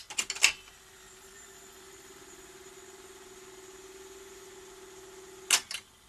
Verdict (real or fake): real